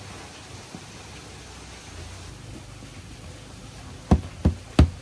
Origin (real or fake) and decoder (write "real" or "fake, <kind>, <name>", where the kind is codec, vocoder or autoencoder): real